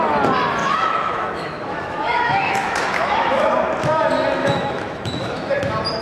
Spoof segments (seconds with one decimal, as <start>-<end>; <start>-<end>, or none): 0.6-3.5; 4.4-5.5